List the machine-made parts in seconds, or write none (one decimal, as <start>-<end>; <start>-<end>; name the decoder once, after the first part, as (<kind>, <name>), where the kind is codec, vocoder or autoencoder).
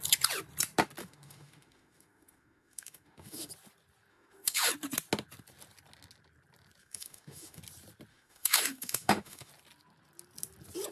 1.0-3.5 (autoencoder, DAC-VAE); 4.1-4.7; 6.8-7.6; 8.1-9.5